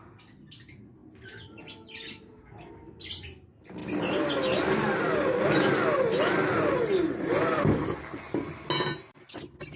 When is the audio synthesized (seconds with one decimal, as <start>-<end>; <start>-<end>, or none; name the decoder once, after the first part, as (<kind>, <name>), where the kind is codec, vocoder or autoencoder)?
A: none